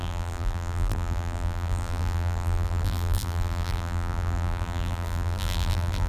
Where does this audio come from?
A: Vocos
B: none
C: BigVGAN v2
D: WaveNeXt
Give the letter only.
C